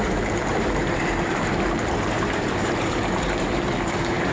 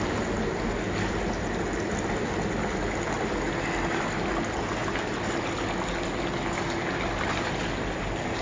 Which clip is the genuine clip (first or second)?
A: second